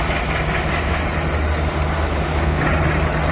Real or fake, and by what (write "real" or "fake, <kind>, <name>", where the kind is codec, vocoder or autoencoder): real